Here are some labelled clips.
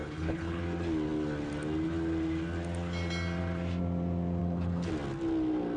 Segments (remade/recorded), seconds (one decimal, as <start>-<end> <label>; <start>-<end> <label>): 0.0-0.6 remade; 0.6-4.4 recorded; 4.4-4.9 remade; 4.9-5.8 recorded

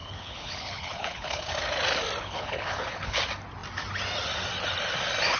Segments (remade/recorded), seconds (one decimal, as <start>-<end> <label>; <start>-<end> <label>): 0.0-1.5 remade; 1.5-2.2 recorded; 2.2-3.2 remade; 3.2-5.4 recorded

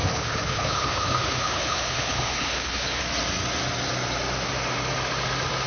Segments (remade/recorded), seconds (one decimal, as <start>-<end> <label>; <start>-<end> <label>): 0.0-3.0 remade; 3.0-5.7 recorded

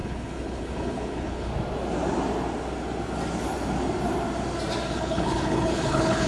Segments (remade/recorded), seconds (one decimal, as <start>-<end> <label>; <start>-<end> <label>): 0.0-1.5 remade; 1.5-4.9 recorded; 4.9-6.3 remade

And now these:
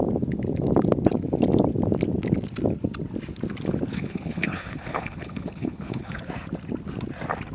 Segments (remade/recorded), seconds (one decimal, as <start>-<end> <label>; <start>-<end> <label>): 0.0-3.9 recorded; 3.9-6.2 remade; 6.2-7.5 recorded

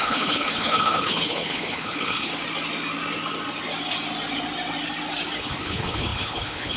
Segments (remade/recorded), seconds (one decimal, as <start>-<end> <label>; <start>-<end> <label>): 0.0-2.3 remade; 2.3-5.4 recorded; 5.4-6.8 remade

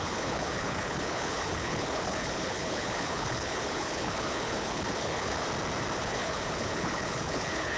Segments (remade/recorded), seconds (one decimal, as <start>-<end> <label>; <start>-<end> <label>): 0.0-5.4 remade; 5.4-6.0 recorded; 6.0-7.8 remade

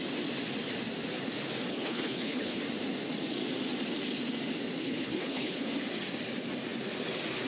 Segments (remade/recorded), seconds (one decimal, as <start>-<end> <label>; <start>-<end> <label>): 0.0-1.7 recorded; 1.7-2.6 remade; 2.6-4.8 recorded; 4.8-5.7 remade; 5.7-7.5 recorded